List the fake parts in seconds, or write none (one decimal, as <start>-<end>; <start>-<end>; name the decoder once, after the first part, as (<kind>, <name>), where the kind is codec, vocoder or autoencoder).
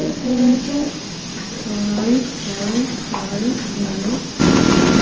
0.0-0.9 (vocoder, WaveNeXt)